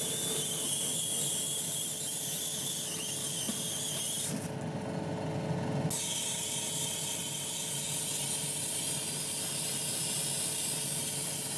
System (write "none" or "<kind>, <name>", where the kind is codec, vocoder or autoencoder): none